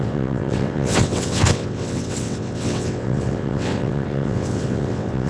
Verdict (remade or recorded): remade